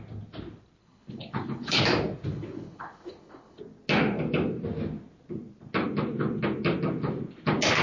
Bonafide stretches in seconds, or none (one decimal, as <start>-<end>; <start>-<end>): 0.0-0.8; 1.8-2.3; 3.6-7.8